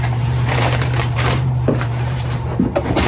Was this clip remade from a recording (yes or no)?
yes